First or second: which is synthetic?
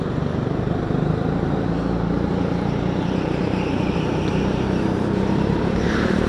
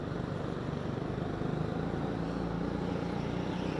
first